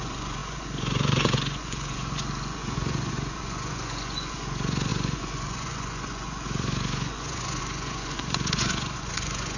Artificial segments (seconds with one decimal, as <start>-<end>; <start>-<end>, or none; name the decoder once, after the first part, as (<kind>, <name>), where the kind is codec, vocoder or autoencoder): 0.0-9.6 (vocoder, Vocos)

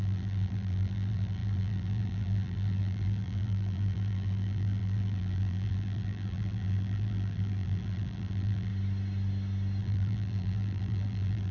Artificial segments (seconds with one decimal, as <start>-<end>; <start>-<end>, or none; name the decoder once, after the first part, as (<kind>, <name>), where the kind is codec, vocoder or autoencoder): 0.0-8.7 (vocoder, BigVGAN v2); 9.8-11.5

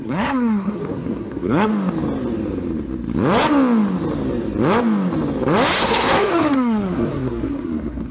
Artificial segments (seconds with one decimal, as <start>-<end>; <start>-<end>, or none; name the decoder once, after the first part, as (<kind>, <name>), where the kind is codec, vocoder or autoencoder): 0.0-1.7 (codec, SNAC); 5.8-8.1